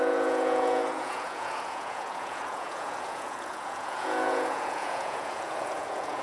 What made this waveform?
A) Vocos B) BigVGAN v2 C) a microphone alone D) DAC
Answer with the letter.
A